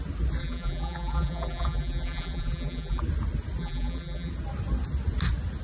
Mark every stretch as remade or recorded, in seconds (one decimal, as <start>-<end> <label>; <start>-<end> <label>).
0.0-0.4 recorded; 0.4-3.0 remade; 3.0-3.6 recorded; 3.6-4.3 remade; 4.3-5.6 recorded